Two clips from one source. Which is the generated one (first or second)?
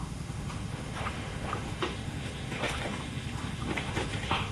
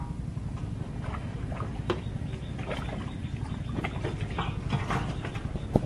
first